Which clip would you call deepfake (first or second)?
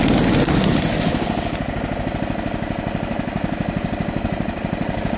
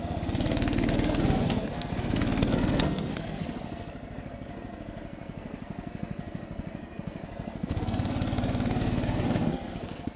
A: second